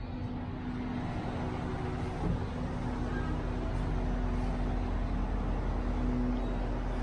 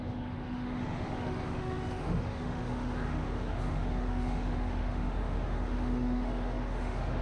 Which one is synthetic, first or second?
second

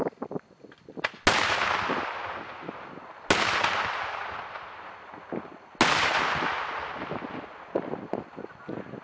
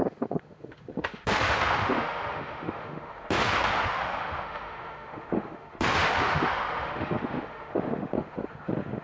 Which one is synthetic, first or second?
second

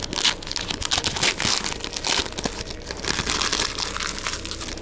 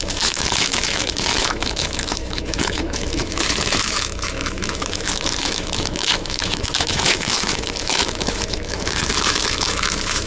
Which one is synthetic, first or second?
second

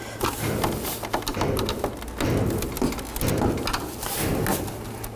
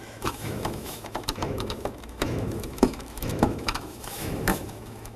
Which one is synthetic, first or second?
second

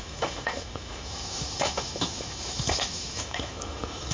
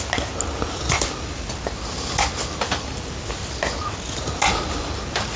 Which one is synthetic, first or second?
first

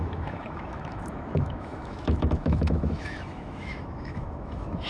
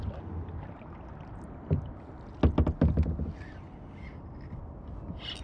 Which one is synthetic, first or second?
first